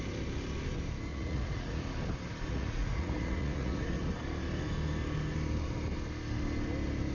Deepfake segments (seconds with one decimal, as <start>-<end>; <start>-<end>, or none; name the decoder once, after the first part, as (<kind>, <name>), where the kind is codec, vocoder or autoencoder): 1.1-1.8 (vocoder, Vocos); 2.5-4.1